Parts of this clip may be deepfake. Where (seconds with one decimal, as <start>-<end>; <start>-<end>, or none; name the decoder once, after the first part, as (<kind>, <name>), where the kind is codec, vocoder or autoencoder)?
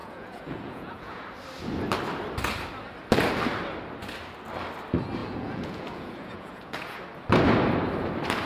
0.0-1.2 (vocoder, Vocos); 5.2-7.0